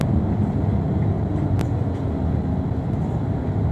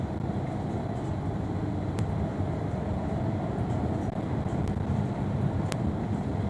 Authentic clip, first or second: first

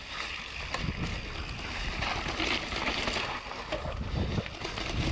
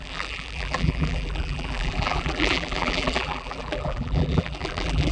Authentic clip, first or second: first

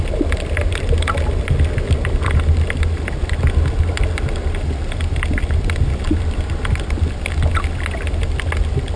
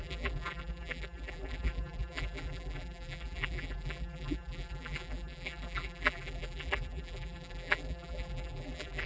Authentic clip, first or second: first